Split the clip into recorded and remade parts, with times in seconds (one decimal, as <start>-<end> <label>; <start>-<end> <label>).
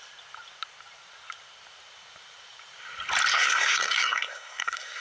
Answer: 0.0-3.3 recorded; 3.3-5.0 remade